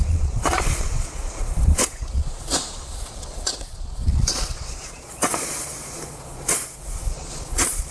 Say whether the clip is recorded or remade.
remade